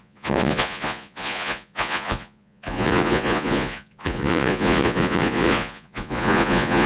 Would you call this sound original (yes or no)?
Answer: no